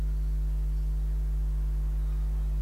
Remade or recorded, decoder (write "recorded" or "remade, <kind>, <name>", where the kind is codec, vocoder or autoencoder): recorded